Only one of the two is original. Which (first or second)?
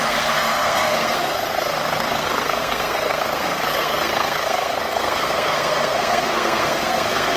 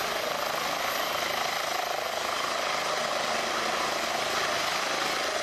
second